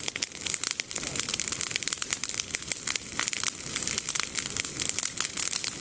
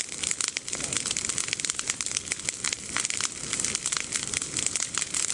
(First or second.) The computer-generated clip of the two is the second